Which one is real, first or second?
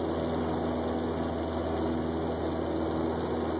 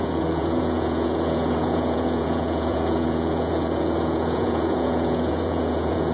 first